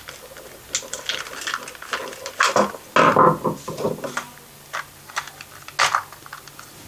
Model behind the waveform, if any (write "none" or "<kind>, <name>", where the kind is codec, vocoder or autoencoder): none